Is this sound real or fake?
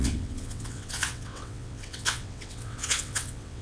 fake